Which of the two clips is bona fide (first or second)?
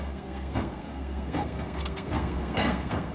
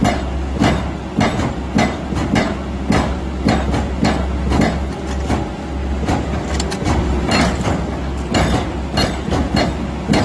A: second